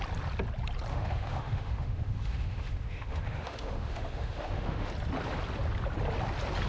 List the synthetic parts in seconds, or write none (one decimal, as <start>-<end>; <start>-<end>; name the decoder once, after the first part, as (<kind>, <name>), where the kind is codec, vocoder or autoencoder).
0.9-4.9 (autoencoder, DAC-VAE)